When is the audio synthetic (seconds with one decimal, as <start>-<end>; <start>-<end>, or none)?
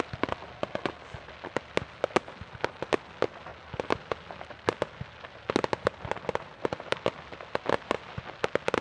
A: none